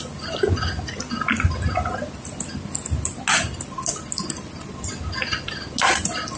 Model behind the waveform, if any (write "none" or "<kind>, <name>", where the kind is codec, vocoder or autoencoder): none